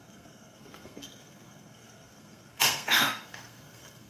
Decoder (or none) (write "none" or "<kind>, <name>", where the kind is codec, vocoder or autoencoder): codec, SNAC